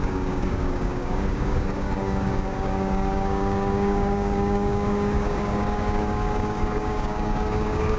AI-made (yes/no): yes